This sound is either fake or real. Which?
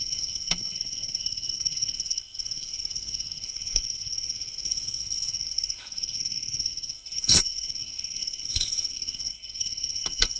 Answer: fake